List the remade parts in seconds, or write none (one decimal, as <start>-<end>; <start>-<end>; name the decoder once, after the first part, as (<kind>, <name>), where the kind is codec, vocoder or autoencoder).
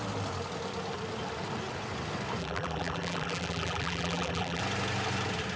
2.4-4.6 (vocoder, BigVGAN v2)